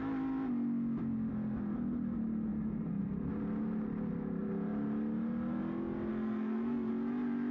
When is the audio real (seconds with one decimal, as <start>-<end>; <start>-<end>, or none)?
0.0-6.1; 6.9-7.5